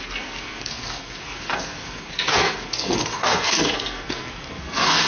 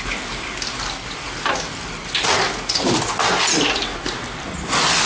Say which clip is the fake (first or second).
first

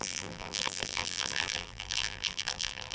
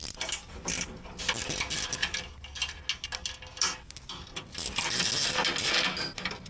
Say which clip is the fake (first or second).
first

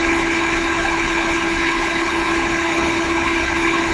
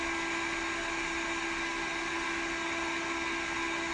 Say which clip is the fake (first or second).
first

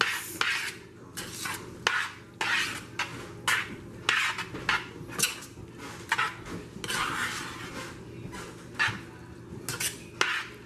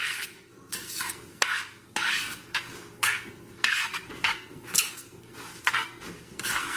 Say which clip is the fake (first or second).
second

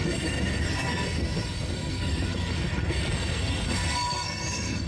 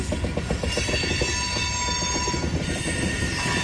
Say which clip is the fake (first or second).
first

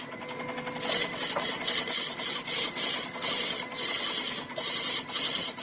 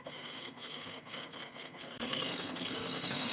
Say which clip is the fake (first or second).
second